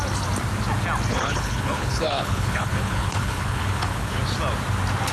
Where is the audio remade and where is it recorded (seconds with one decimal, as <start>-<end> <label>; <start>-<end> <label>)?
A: 0.0-1.1 recorded; 1.1-4.2 remade; 4.2-5.1 recorded